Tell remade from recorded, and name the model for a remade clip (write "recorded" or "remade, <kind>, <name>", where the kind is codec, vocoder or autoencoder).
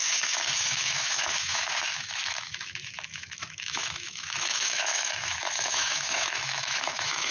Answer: remade, autoencoder, DAC-VAE